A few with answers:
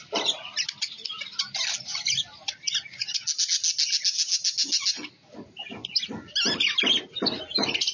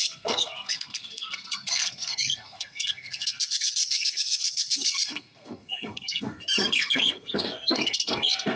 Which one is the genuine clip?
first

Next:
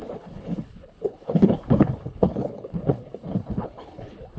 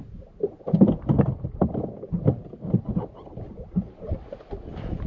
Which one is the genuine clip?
second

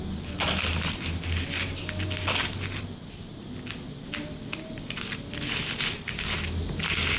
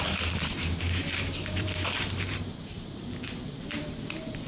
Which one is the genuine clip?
first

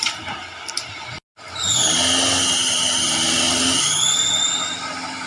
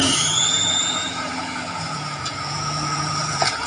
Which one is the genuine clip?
first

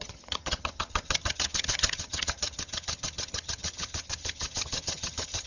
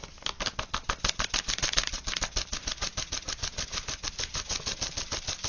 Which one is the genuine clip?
second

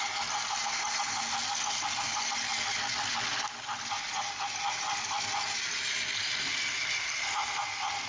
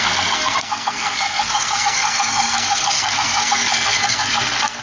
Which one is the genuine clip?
first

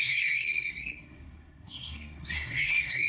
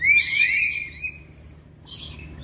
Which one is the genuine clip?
second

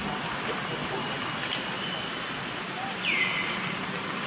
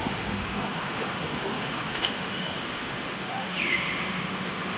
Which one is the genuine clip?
first